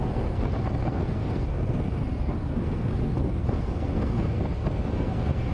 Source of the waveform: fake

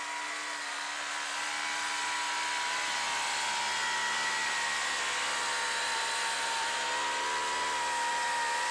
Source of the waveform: real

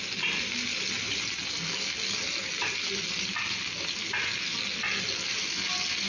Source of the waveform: real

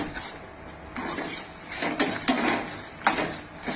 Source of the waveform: real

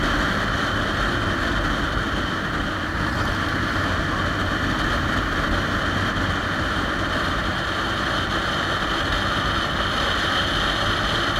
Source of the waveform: real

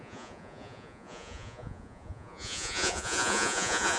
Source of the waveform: fake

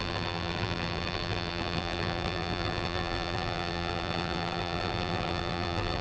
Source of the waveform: fake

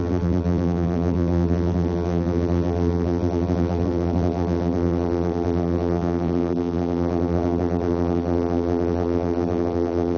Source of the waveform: fake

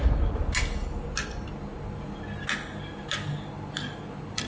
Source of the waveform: real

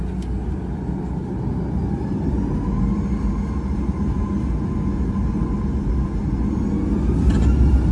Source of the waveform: real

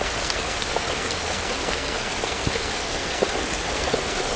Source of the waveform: fake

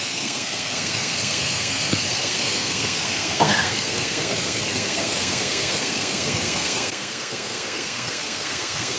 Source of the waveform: fake